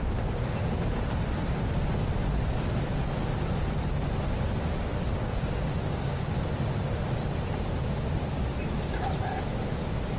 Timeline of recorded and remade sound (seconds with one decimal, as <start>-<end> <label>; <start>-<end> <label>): 0.0-5.2 recorded; 5.2-6.3 remade; 6.3-10.2 recorded